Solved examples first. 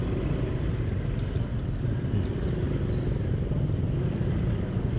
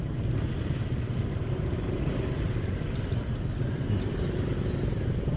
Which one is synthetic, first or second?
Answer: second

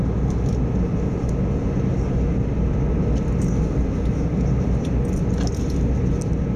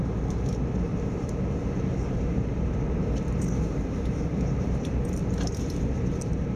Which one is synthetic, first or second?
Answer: second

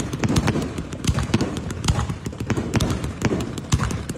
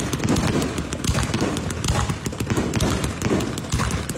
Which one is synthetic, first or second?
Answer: first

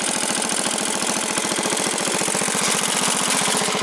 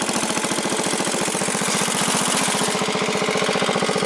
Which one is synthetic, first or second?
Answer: first